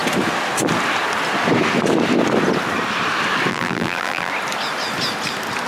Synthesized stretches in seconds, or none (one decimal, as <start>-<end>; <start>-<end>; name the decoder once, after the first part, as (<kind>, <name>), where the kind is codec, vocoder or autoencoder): 3.5-4.3 (vocoder, BigVGAN v2)